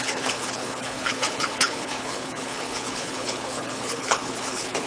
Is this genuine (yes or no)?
no